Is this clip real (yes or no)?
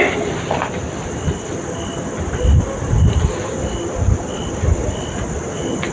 yes